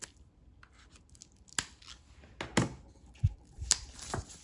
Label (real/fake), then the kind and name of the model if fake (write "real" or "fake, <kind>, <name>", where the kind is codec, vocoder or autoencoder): real